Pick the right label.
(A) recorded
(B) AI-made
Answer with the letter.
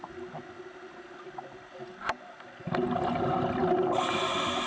A